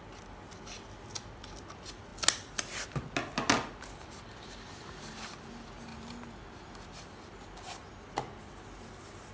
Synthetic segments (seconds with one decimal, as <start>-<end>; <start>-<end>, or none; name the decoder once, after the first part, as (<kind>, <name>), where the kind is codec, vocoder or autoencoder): none